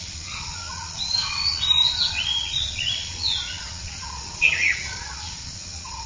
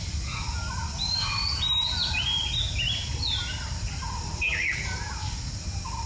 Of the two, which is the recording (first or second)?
second